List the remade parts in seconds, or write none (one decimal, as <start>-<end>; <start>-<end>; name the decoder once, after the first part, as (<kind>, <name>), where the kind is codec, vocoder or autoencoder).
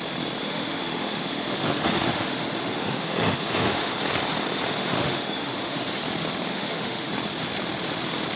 0.4-3.9 (autoencoder, DAC-VAE); 4.8-6.0; 6.5-7.1